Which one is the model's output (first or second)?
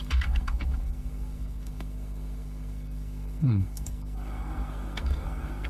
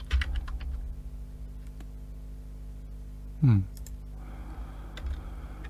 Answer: first